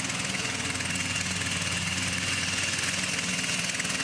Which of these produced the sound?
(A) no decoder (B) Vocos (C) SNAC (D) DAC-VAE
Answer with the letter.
B